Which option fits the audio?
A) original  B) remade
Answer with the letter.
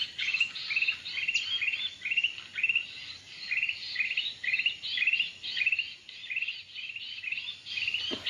A